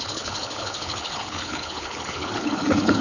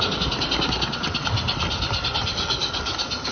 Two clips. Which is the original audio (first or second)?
second